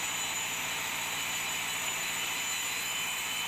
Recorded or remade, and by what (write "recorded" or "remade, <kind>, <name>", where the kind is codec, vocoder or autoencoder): recorded